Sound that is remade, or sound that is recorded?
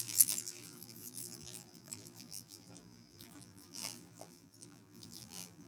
remade